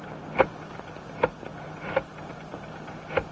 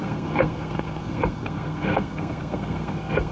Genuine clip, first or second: first